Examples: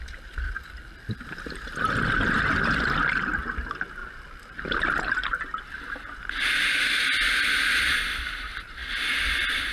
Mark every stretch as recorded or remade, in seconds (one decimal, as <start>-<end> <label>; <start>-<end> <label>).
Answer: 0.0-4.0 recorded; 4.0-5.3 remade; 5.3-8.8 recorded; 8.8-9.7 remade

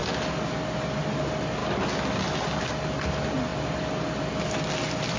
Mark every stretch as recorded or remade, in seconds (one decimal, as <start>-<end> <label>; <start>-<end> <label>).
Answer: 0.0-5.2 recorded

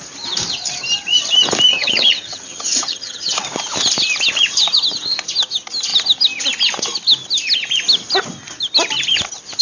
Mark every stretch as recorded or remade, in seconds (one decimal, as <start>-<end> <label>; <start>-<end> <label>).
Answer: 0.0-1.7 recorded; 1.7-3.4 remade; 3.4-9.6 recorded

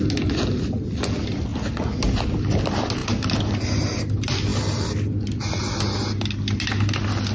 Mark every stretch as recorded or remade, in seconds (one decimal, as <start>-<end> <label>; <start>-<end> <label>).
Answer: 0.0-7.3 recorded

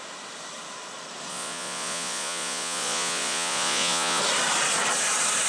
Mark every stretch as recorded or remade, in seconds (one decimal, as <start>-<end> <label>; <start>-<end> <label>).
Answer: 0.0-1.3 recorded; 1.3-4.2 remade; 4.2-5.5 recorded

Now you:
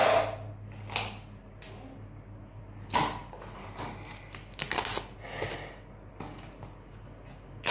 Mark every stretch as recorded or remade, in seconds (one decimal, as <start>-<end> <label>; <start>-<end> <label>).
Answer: 0.0-7.7 recorded